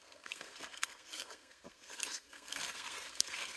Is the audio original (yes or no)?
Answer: no